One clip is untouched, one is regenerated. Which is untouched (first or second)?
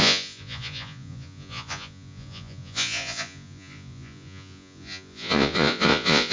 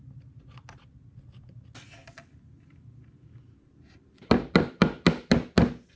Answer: second